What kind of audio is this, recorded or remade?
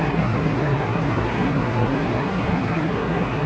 remade